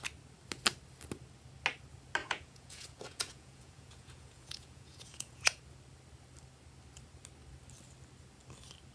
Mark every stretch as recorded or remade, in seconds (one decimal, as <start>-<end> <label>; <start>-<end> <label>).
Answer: 0.0-2.2 recorded; 2.2-5.6 remade; 5.6-8.9 recorded